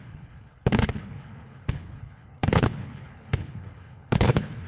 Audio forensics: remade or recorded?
remade